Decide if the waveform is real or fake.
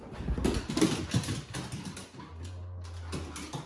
real